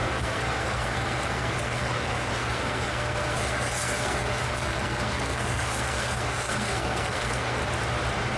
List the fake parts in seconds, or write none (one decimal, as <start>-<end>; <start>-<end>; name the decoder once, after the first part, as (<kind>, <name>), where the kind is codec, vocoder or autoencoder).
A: 0.0-7.6 (codec, SNAC)